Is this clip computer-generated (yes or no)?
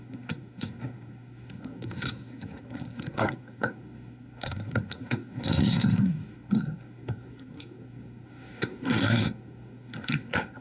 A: yes